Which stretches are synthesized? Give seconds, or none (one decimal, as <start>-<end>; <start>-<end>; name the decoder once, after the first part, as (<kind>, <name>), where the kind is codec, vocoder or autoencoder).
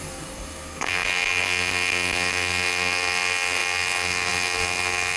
0.0-5.2 (codec, DAC)